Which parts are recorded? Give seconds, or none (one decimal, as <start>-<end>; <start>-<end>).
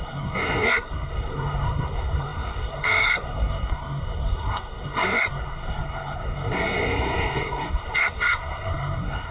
none